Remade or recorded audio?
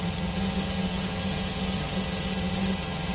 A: remade